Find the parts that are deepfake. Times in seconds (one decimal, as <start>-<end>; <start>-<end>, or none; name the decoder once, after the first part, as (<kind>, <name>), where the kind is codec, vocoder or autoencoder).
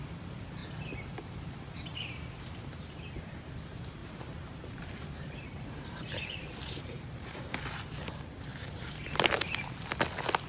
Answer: 0.6-3.5 (vocoder, BigVGAN v2); 4.0-7.6; 8.5-9.9